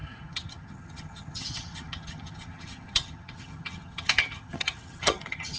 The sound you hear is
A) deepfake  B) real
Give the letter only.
A